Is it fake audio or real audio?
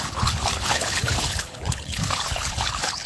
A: fake